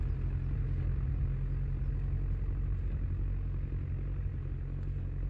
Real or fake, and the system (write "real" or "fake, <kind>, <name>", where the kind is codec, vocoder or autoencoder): real